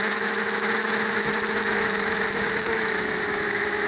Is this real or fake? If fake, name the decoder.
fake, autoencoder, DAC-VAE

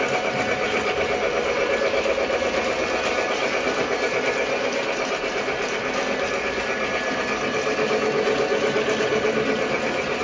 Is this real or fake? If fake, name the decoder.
real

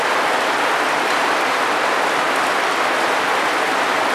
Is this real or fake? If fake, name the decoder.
real